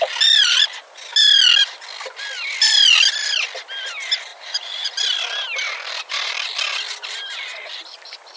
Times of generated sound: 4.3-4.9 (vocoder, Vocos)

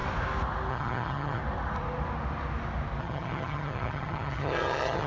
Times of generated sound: 0.7-1.4 (vocoder, HiFi-GAN); 3.0-5.1

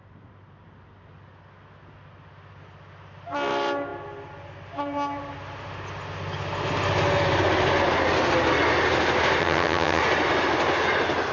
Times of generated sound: 9.4-10.0 (vocoder, HiFi-GAN)